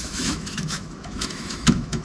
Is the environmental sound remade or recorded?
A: remade